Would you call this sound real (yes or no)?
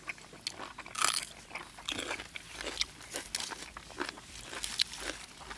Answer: yes